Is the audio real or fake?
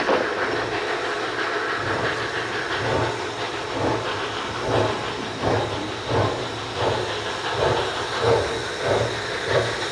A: real